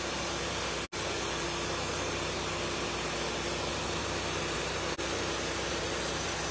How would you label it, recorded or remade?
recorded